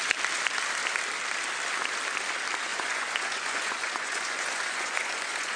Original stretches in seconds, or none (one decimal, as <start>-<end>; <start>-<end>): 0.0-2.7